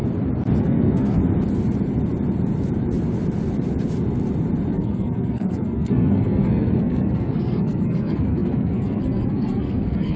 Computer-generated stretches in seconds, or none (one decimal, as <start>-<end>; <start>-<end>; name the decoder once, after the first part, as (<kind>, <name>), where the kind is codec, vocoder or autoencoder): 0.6-1.2 (codec, SNAC); 4.7-10.2

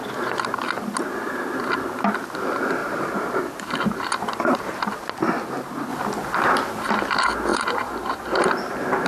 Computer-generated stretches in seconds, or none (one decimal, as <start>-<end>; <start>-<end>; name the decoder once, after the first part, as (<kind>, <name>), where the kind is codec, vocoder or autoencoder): 2.8-4.4 (vocoder, BigVGAN v2); 7.5-9.1

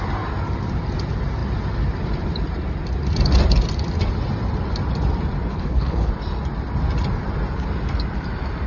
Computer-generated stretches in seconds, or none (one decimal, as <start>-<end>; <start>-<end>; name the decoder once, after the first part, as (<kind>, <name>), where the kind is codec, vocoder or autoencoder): 5.5-6.1 (codec, HILCodec)

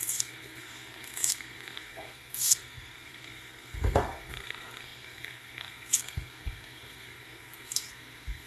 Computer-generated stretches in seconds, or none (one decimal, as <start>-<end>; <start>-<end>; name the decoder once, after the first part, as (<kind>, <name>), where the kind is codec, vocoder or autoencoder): 0.0-8.5 (codec, SNAC)

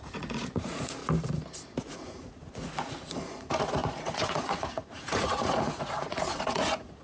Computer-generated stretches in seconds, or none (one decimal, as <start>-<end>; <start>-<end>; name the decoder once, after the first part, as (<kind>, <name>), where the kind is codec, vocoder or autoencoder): 0.0-1.0 (vocoder, Vocos); 1.8-7.0